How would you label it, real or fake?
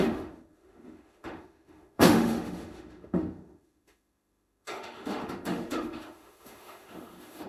fake